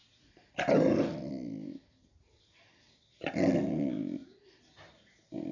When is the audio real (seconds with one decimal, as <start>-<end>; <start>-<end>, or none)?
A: 0.0-5.5